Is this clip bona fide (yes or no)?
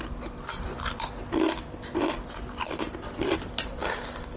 yes